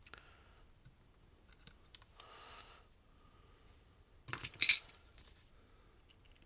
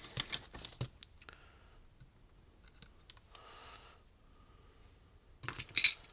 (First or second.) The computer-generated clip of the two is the first